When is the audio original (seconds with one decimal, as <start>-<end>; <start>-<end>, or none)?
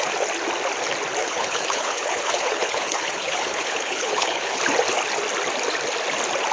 0.0-1.2; 4.6-6.5